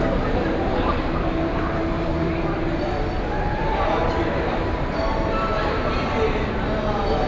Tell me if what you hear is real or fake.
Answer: fake